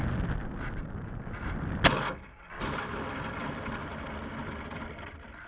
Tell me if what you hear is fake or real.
real